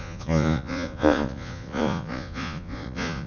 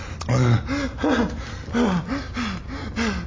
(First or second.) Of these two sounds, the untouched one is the second